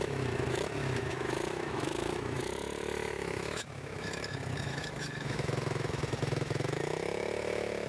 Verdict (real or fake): fake